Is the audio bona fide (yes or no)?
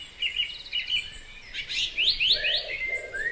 yes